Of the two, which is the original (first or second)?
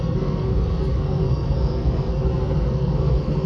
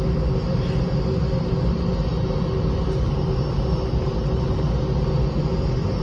second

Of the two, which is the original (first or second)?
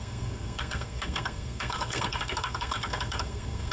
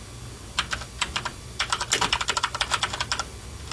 second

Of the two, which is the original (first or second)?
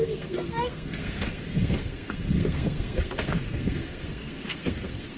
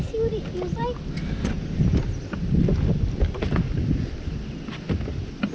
second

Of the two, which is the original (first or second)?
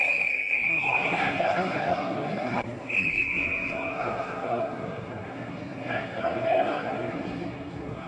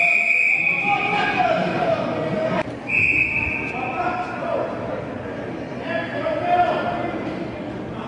second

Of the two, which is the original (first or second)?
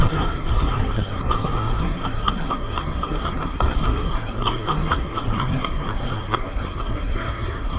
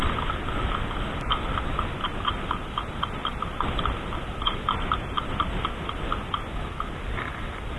second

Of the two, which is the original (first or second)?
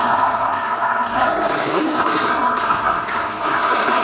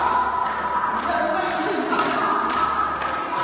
second